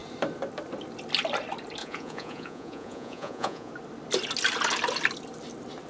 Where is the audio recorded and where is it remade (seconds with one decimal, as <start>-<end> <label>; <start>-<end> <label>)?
0.0-1.8 recorded; 1.8-3.7 remade; 3.7-5.9 recorded